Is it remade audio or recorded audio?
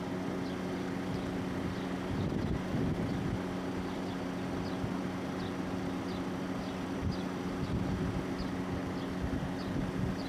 recorded